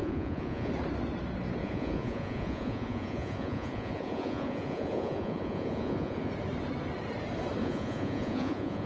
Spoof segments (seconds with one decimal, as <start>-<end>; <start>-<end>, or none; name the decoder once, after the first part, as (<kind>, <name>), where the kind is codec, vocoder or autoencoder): 0.0-0.7 (vocoder, Vocos); 1.6-6.3; 7.6-8.9